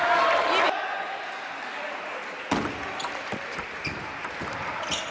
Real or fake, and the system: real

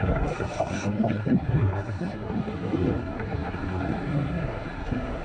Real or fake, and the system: fake, codec, SNAC